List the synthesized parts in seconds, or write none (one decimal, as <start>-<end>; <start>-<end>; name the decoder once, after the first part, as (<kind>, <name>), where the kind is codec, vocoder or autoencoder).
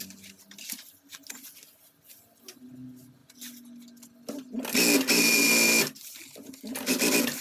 none